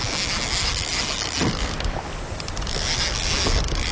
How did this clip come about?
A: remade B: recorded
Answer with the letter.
B